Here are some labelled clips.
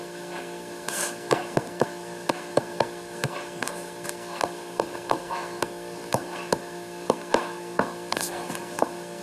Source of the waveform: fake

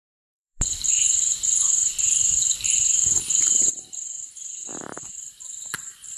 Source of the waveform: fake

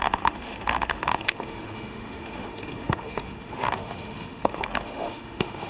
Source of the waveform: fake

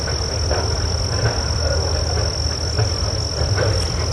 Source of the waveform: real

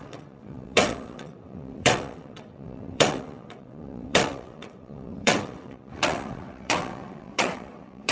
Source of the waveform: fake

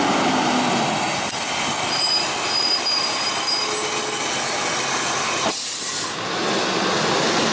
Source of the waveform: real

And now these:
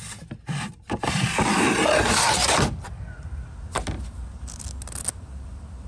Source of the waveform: real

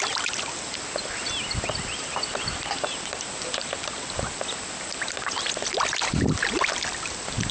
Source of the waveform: real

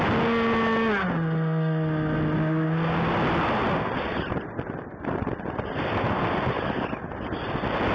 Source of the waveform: real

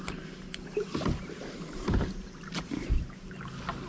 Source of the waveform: real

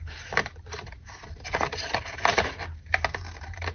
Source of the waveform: fake